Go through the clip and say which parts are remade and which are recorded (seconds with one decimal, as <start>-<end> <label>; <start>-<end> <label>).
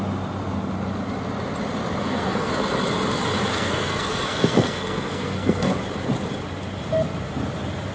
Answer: 0.0-2.0 recorded; 2.0-2.5 remade; 2.5-3.5 recorded; 3.5-5.7 remade; 5.7-7.9 recorded